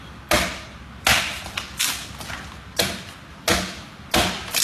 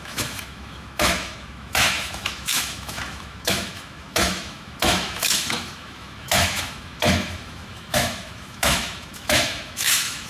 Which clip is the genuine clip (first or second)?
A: first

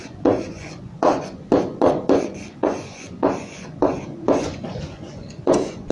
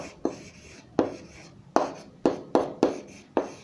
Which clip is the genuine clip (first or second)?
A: second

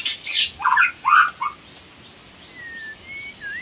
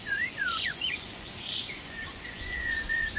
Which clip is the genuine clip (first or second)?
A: first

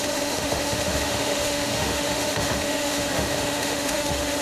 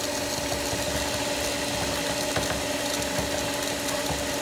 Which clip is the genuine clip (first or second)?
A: second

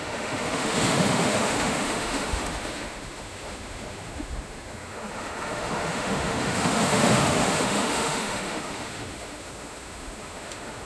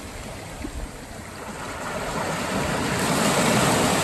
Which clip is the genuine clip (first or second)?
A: second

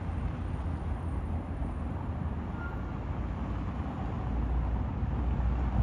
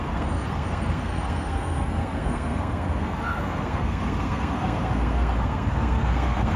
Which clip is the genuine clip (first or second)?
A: first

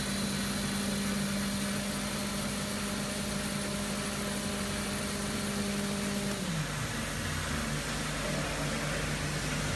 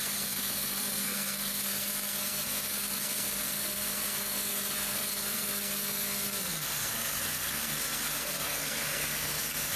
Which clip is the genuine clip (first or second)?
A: first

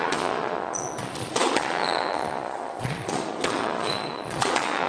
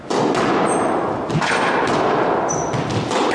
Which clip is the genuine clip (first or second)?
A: second